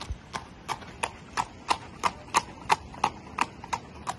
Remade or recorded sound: recorded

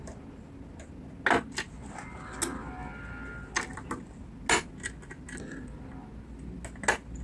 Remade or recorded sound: recorded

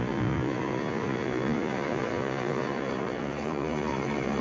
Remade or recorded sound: remade